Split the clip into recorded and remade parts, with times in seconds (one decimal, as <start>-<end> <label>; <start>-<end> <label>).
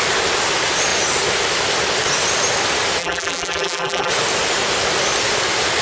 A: 0.0-3.0 recorded; 3.0-4.1 remade; 4.1-5.8 recorded